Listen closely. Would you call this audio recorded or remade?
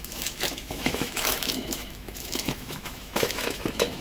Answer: remade